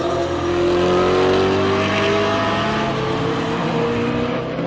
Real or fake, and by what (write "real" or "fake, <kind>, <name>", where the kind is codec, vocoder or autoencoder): real